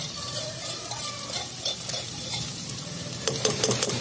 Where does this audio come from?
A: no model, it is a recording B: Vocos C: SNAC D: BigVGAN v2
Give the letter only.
D